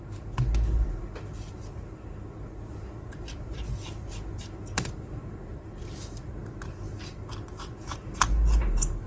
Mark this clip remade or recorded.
recorded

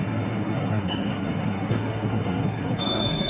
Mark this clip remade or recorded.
remade